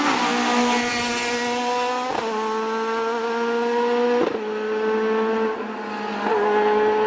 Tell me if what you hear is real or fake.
real